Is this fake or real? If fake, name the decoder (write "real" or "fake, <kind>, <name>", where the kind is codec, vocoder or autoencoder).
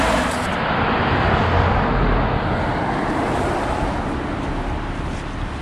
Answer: real